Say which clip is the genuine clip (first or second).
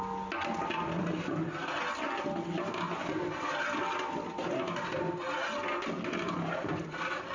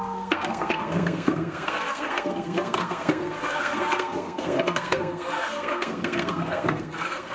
first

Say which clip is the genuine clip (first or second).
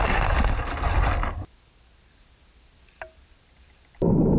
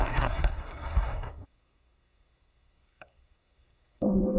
first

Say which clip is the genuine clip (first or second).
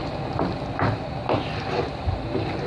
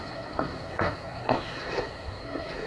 first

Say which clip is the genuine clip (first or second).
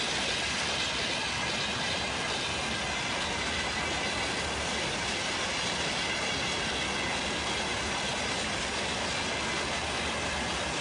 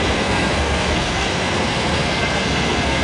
first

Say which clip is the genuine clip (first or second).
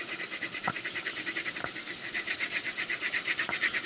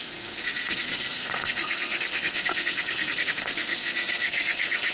first